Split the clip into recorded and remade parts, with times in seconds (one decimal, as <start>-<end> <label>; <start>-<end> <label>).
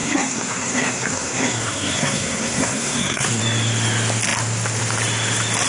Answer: 0.0-3.4 remade; 3.4-5.7 recorded